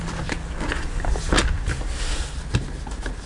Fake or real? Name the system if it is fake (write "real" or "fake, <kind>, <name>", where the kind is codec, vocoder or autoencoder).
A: real